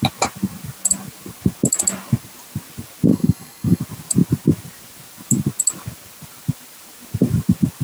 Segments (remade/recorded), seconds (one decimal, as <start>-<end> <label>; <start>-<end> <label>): 0.0-3.1 recorded; 3.1-3.8 remade; 3.8-7.8 recorded